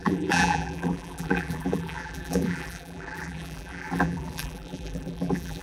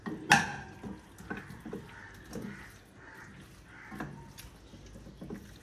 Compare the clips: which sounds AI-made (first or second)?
first